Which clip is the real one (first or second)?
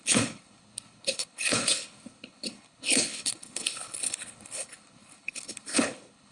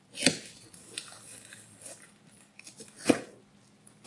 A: second